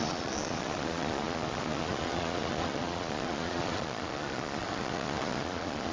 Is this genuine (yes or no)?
no